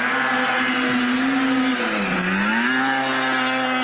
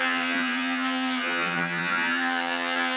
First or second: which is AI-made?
second